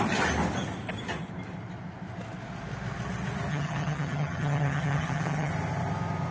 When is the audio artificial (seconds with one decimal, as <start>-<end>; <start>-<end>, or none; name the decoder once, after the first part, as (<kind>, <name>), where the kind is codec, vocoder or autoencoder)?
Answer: 3.5-5.5 (vocoder, HiFi-GAN)